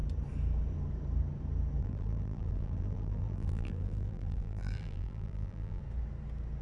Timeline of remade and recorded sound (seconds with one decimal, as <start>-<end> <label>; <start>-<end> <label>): 0.0-1.8 recorded; 1.8-5.8 remade; 5.8-6.6 recorded